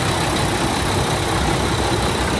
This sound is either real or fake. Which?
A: real